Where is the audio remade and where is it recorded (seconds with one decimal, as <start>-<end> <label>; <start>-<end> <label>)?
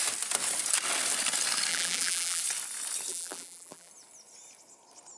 0.0-1.7 recorded; 1.7-2.4 remade; 2.4-3.1 recorded; 3.1-3.9 remade; 3.9-5.2 recorded